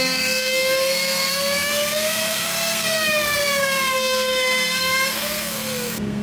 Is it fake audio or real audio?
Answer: fake